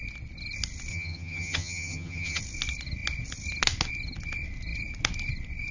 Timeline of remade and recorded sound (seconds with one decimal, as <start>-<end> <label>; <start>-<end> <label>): 0.0-0.9 recorded; 0.9-2.4 remade; 2.4-5.7 recorded